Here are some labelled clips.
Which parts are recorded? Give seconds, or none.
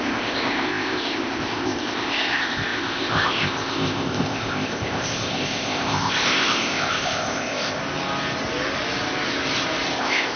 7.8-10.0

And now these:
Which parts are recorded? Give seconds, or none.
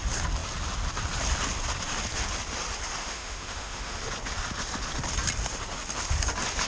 0.0-3.0; 4.0-6.7